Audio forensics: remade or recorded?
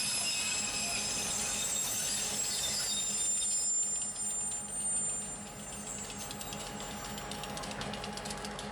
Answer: recorded